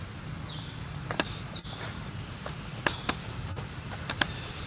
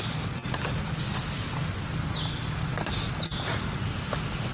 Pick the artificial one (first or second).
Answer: first